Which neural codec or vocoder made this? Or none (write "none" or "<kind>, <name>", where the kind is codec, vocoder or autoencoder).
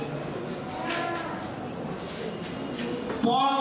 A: none